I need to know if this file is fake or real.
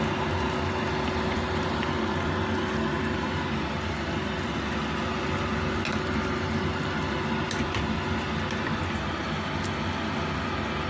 real